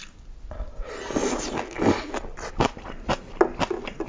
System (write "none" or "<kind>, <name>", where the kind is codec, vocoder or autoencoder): none